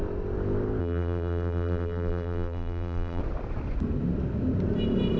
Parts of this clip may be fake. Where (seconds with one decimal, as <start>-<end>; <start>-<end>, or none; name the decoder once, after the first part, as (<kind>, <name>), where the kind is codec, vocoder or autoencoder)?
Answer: 0.8-3.2 (vocoder, BigVGAN v2)